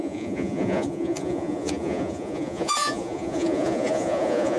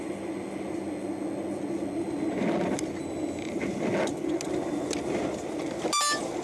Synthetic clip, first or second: first